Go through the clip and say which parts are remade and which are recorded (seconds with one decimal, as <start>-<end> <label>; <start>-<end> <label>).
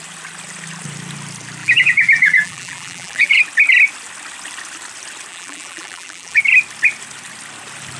0.0-1.6 recorded; 1.6-3.4 remade; 3.4-5.3 recorded; 5.3-6.4 remade; 6.4-8.0 recorded